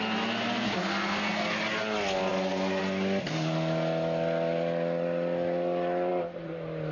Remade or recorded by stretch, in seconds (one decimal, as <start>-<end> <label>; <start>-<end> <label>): 0.0-6.9 recorded